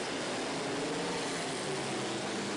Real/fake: real